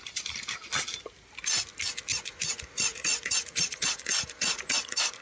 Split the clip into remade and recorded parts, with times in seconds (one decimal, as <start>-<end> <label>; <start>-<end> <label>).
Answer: 0.0-2.1 recorded; 2.1-5.2 remade